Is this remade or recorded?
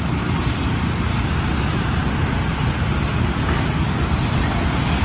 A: recorded